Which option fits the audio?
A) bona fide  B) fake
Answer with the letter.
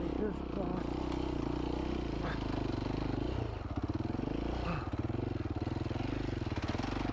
A